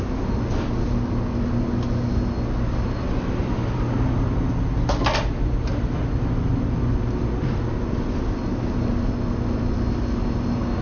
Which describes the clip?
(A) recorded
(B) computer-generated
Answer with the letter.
A